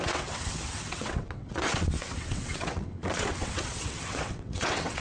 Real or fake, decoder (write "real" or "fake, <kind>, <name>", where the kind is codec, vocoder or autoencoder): fake, vocoder, WaveNeXt